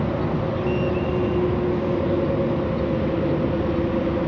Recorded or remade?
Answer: recorded